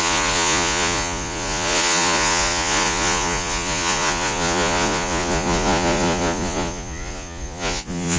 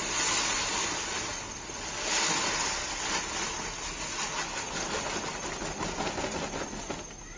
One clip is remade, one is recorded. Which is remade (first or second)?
first